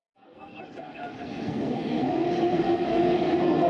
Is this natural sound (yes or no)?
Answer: no